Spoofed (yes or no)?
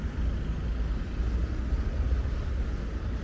no